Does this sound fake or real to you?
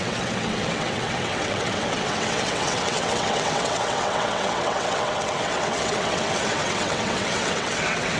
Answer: fake